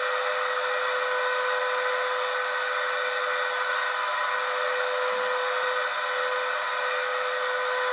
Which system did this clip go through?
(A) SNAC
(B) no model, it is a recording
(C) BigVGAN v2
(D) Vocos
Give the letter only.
B